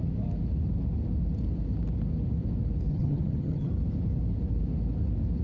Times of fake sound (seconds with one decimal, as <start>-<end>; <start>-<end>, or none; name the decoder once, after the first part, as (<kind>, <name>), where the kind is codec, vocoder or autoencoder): 2.9-3.7 (vocoder, HiFi-GAN)

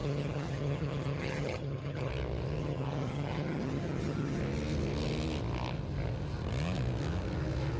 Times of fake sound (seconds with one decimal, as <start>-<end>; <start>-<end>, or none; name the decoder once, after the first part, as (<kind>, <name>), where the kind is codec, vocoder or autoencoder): 0.0-2.1 (vocoder, HiFi-GAN); 2.6-4.4

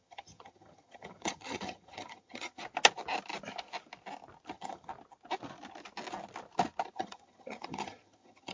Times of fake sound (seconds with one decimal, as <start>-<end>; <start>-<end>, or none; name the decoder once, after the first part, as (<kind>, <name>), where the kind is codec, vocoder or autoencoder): 0.0-2.6 (vocoder, HiFi-GAN); 4.5-4.9; 6.9-8.5

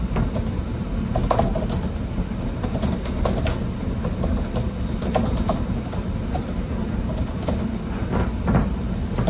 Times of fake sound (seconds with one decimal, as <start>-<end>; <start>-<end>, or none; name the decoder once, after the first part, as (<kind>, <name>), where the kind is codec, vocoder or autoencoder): none

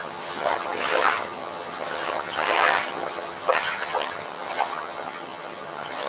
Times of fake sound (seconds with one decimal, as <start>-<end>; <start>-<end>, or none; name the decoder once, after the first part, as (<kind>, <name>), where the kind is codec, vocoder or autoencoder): 0.0-6.1 (vocoder, HiFi-GAN)